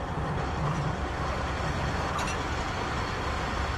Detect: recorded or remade recorded